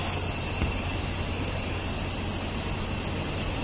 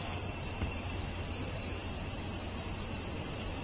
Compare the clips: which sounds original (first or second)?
first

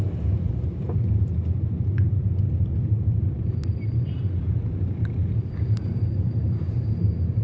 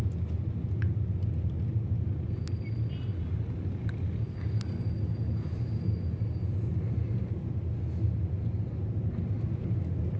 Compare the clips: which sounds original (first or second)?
second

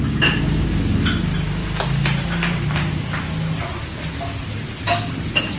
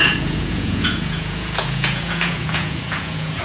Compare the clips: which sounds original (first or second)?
first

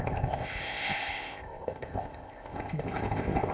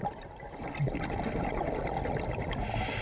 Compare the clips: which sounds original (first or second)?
second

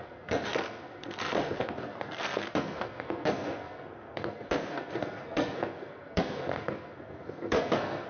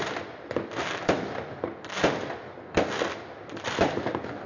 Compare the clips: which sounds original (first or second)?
second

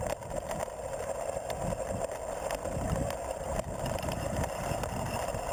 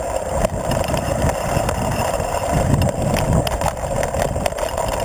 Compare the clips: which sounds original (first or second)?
first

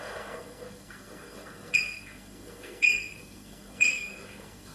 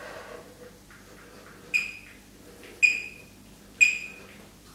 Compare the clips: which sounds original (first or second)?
second